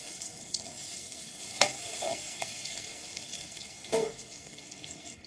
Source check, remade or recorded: remade